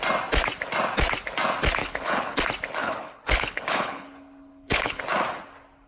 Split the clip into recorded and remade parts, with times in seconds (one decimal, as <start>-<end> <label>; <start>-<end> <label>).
0.0-1.8 recorded; 1.8-2.4 remade; 2.4-2.8 recorded; 2.8-5.0 remade; 5.0-5.9 recorded

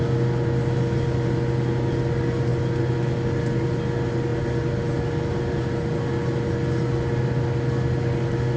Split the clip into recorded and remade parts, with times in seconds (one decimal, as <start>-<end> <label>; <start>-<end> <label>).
0.0-8.6 recorded

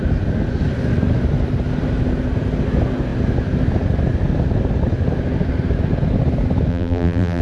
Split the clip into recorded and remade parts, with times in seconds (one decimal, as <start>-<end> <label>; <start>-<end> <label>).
0.0-6.7 recorded; 6.7-7.4 remade

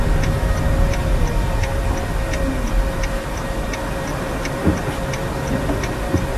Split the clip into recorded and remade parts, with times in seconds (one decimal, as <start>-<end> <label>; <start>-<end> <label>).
0.0-4.1 recorded; 4.1-4.7 remade; 4.7-6.4 recorded